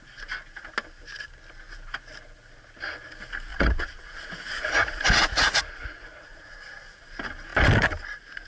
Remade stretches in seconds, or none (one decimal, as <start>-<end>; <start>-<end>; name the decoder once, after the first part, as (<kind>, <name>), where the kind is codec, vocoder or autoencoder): 3.5-6.6 (vocoder, Vocos)